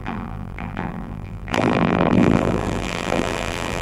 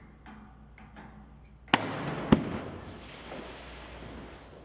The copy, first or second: first